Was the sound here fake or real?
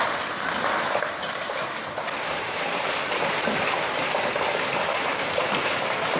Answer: real